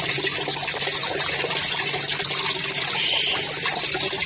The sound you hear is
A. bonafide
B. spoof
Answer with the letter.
A